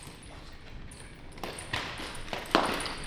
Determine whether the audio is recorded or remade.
recorded